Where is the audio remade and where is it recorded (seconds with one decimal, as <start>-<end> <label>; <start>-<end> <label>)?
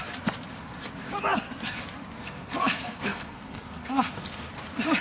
0.0-2.2 recorded; 2.2-4.5 remade; 4.5-5.0 recorded